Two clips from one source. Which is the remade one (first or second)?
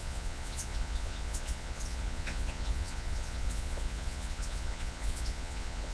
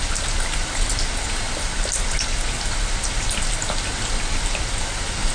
first